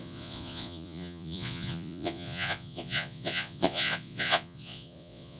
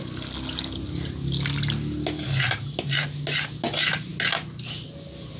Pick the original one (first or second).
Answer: second